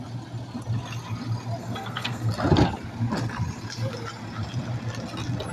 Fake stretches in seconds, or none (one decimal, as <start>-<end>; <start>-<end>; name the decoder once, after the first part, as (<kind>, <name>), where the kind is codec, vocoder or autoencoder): 1.6-2.3 (codec, SNAC)